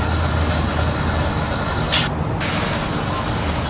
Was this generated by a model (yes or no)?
no